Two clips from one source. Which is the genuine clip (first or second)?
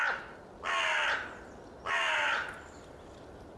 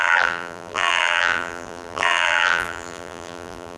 first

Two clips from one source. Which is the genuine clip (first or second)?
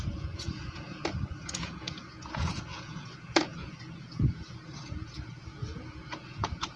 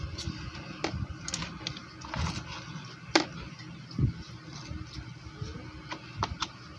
second